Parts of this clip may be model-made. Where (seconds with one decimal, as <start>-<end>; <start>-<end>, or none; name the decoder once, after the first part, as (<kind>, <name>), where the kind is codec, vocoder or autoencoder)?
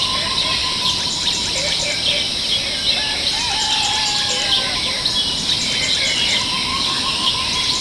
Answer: 6.7-7.3 (codec, DAC)